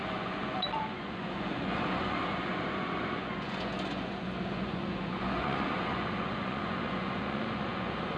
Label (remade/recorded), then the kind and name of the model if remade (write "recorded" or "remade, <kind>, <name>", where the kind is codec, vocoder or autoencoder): remade, vocoder, Vocos